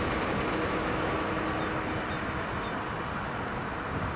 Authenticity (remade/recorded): recorded